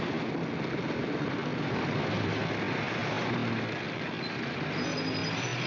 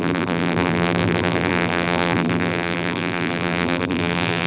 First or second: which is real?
first